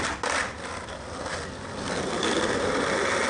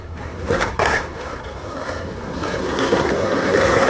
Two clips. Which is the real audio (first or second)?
first